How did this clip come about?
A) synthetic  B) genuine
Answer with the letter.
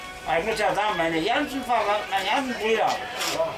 B